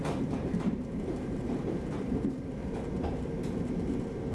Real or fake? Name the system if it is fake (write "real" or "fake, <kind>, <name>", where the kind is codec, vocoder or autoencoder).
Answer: fake, vocoder, BigVGAN v2